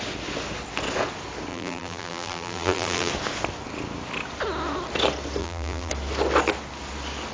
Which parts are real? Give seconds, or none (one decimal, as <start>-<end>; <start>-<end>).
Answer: 0.0-1.5; 3.1-5.4; 5.9-7.3

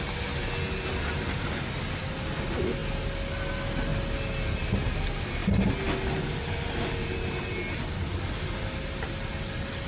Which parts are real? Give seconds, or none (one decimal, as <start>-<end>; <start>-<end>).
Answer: 0.0-9.9

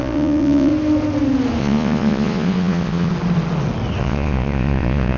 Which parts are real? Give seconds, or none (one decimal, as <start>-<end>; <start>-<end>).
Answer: 0.7-1.6; 3.1-4.0

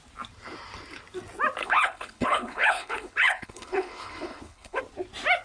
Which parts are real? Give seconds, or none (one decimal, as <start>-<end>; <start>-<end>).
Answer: 0.0-1.6; 4.8-5.4